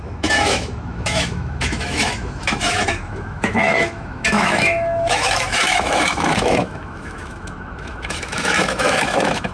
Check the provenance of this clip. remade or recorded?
remade